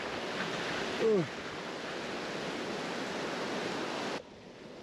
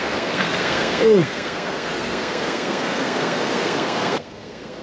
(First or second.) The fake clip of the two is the second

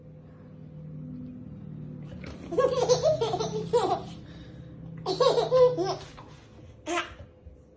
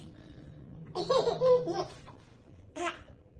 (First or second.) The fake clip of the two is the second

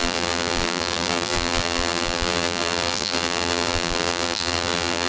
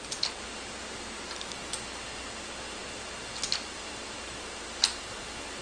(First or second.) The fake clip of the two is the first